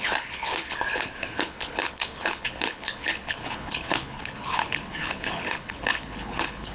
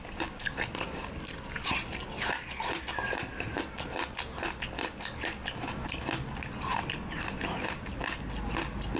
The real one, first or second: second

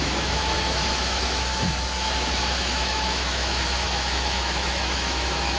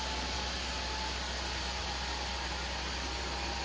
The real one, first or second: second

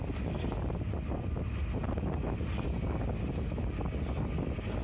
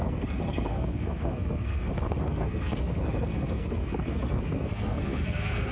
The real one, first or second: first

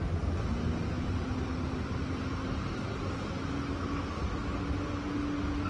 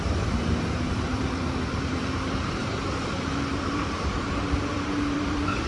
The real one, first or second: first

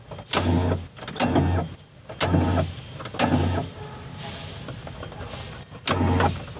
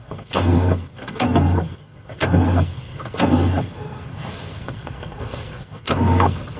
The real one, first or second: first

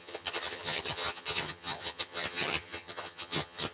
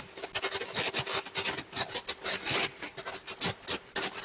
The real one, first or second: second